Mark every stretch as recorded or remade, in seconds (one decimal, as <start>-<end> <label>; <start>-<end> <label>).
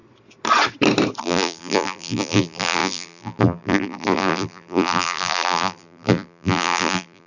0.0-1.2 recorded; 1.2-7.3 remade